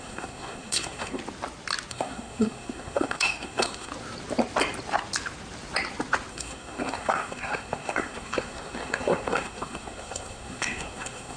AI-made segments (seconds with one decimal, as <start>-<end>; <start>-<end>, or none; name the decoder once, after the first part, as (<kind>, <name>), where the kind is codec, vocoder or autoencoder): 0.0-1.2 (codec, SNAC); 1.9-3.9; 6.3-11.4